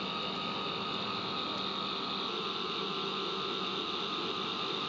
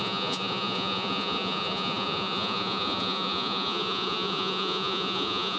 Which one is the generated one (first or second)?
second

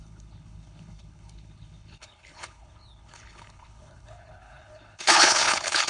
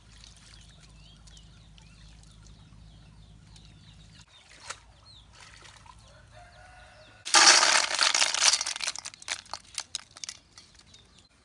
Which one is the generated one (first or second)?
first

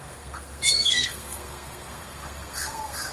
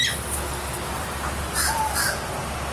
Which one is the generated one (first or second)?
first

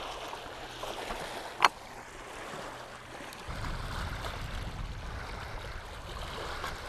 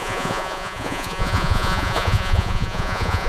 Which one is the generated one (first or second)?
second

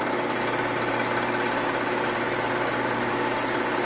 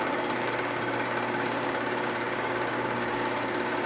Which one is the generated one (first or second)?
second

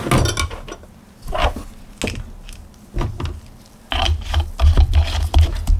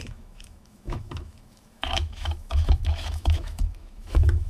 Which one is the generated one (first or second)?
second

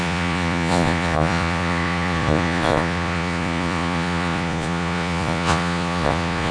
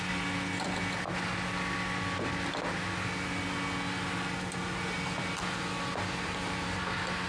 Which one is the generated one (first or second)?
first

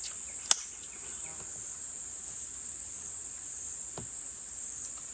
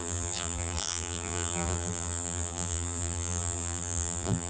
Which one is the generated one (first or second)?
second